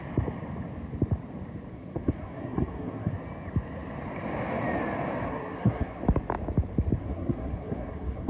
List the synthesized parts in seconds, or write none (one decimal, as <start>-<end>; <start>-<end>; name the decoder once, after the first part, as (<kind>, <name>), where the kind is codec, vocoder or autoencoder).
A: 1.7-3.1 (codec, SNAC); 5.3-6.0; 7.0-8.3